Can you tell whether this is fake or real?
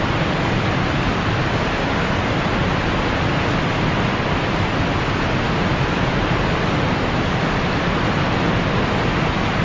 real